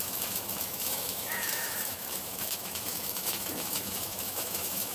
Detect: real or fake fake